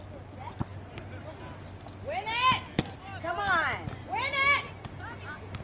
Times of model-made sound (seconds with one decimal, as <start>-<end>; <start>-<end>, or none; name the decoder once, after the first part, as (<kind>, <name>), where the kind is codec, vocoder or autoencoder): none